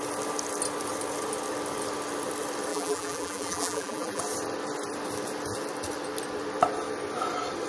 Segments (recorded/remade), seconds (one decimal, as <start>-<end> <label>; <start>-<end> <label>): 0.0-2.7 recorded; 2.7-4.2 remade; 4.2-7.7 recorded